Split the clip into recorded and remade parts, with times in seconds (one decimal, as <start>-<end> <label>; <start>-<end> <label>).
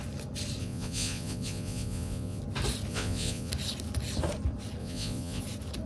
0.0-0.6 recorded; 0.6-2.4 remade; 2.4-2.9 recorded; 2.9-3.5 remade; 3.5-4.8 recorded; 4.8-5.4 remade; 5.4-5.9 recorded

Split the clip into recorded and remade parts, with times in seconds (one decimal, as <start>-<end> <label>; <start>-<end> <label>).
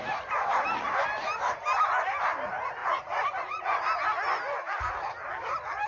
0.0-2.8 recorded; 2.8-3.8 remade; 3.8-5.9 recorded